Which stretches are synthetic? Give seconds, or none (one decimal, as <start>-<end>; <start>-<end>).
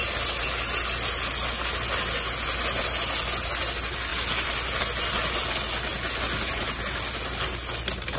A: none